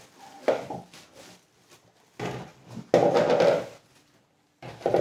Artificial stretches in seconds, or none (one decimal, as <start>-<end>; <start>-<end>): none